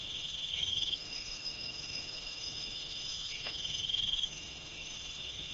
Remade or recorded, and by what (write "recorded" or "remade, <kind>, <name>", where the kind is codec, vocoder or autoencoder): remade, autoencoder, DAC-VAE